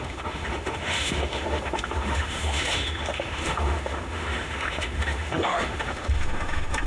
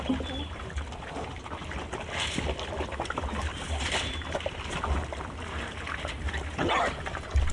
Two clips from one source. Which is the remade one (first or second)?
first